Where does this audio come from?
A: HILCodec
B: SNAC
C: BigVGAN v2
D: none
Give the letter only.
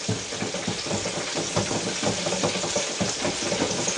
D